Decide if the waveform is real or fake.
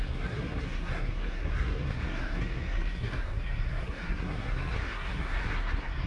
fake